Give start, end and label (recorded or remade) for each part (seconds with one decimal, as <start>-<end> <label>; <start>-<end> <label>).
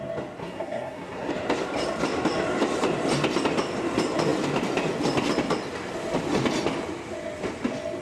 0.0-0.4 recorded; 0.4-1.3 remade; 1.3-8.0 recorded